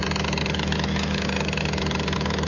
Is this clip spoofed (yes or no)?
yes